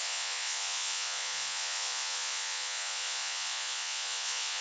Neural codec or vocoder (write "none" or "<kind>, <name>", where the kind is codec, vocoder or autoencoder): vocoder, Vocos